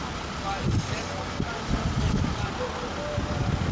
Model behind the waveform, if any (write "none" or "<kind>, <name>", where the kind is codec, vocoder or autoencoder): none